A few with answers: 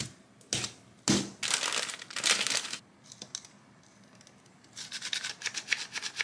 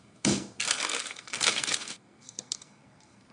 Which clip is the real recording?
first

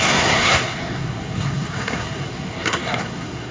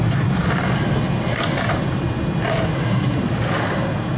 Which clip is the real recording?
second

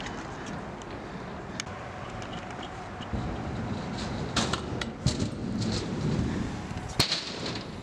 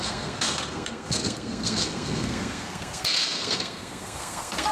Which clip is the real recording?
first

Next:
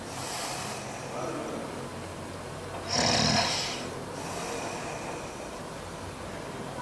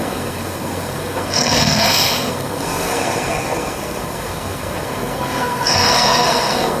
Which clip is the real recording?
first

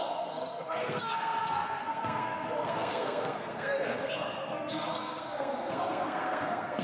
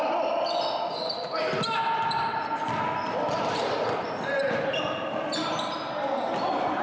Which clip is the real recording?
second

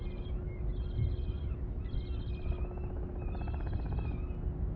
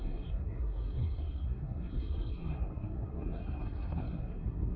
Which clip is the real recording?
first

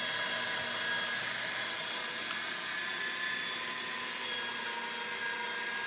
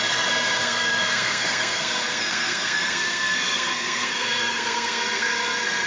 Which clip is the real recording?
first